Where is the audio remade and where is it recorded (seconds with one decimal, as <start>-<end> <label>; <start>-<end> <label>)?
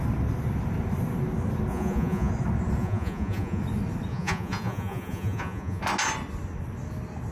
0.0-1.7 recorded; 1.7-2.3 remade; 2.3-2.8 recorded; 2.8-3.6 remade; 3.6-4.1 recorded; 4.1-5.8 remade; 5.8-7.3 recorded